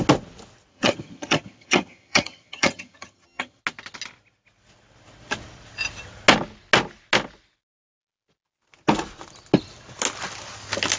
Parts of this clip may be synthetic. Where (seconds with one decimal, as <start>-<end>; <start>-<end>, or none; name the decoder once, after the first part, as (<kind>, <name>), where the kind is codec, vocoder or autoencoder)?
0.7-3.6 (vocoder, HiFi-GAN)